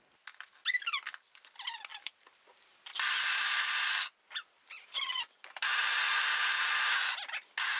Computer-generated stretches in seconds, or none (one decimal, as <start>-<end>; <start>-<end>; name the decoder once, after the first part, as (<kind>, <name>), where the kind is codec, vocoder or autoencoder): 1.9-6.1 (vocoder, BigVGAN v2)